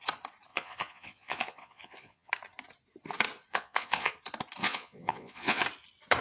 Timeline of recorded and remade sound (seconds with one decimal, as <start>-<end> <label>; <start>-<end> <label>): 0.0-0.5 recorded; 0.5-2.3 remade; 2.3-3.5 recorded; 3.5-4.1 remade; 4.1-4.6 recorded; 4.6-5.6 remade; 5.6-6.2 recorded